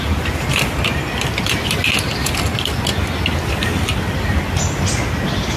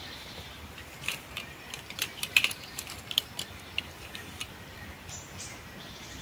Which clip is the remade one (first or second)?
second